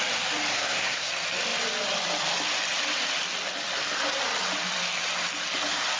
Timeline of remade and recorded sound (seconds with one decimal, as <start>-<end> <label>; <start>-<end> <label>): 0.0-0.5 recorded; 0.5-1.1 remade; 1.1-6.0 recorded